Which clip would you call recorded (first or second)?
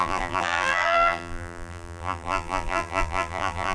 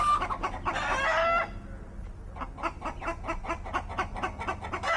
second